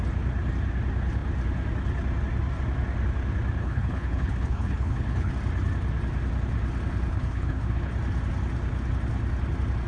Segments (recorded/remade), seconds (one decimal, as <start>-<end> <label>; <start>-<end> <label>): 0.0-3.6 recorded; 3.6-5.3 remade; 5.3-7.1 recorded; 7.1-7.9 remade; 7.9-9.9 recorded